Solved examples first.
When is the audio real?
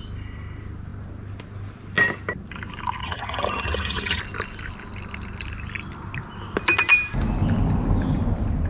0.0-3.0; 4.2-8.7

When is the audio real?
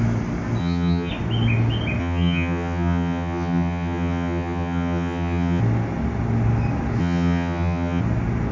0.0-0.6; 1.1-2.0; 5.6-7.0; 8.0-8.5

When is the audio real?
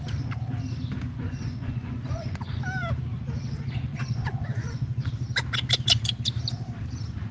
0.0-1.1; 2.6-3.9; 5.1-7.3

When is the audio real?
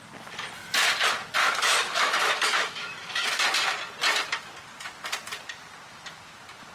0.0-1.4; 3.4-6.7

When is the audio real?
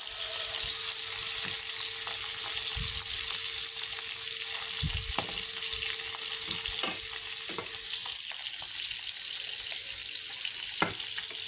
0.0-11.5